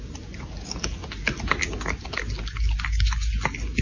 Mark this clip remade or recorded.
recorded